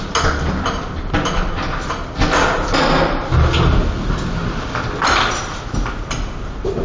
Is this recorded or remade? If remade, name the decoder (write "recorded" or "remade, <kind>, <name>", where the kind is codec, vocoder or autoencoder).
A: recorded